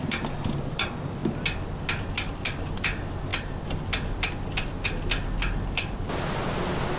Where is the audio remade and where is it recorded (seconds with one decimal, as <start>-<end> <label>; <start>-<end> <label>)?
0.0-7.0 recorded